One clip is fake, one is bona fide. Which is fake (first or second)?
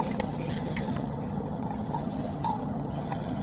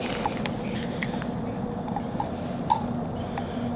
first